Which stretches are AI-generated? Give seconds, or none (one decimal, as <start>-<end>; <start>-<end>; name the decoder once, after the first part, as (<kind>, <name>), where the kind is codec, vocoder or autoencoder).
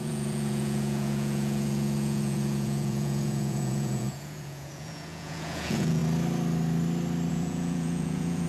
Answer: 0.0-6.0 (vocoder, Vocos); 7.3-8.5